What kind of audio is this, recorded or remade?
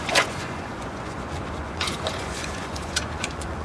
remade